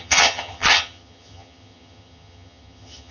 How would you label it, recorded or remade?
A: remade